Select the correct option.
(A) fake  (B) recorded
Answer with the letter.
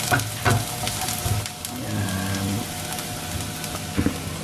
B